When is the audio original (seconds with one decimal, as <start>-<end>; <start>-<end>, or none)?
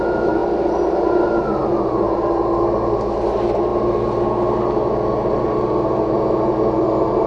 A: 0.0-7.3